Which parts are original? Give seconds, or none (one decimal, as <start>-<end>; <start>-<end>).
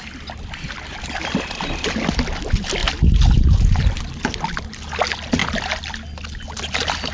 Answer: 0.0-2.8; 4.0-7.1